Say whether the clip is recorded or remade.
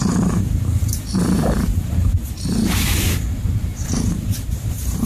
remade